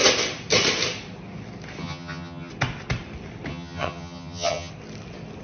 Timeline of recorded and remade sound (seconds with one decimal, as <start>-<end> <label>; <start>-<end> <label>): 0.0-1.8 recorded; 1.8-2.5 remade; 2.5-3.5 recorded; 3.5-4.7 remade; 4.7-5.4 recorded